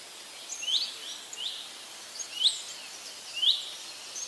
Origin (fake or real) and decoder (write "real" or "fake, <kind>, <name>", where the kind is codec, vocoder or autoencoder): real